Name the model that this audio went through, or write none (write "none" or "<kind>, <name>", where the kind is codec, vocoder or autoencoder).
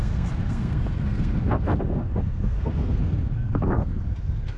codec, SNAC